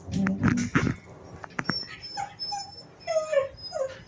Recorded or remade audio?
recorded